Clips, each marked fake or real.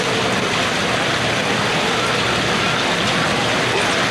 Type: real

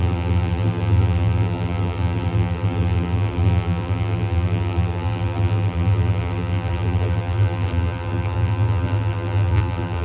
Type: fake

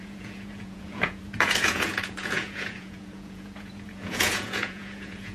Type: fake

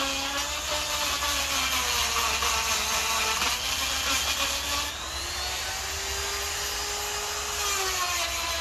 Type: real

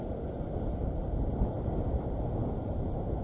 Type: real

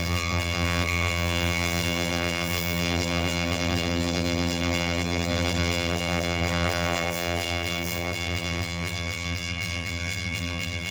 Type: fake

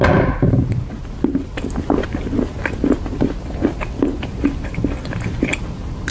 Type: real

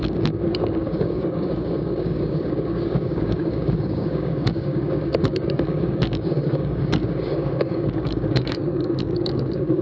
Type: fake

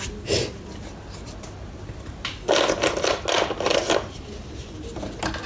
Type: real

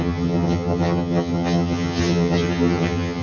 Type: fake